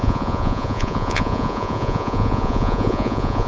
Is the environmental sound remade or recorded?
remade